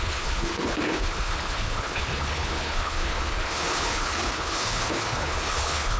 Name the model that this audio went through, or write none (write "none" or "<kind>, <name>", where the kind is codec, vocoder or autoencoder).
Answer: codec, HILCodec